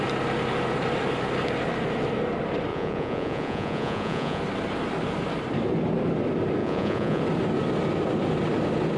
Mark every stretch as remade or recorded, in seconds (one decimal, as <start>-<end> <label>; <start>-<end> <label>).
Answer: 0.0-2.7 recorded; 2.7-4.4 remade; 4.4-6.6 recorded; 6.6-7.2 remade; 7.2-9.0 recorded